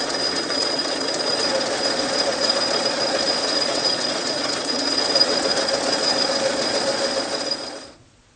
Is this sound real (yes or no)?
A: no